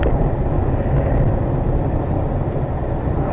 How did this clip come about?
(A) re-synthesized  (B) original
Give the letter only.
B